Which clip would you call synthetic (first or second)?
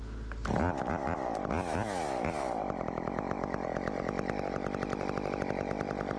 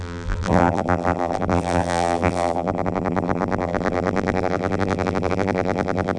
second